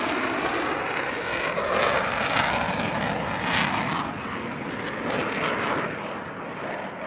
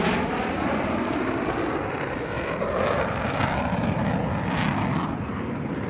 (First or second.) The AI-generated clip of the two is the second